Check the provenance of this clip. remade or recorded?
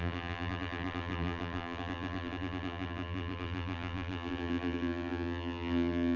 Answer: remade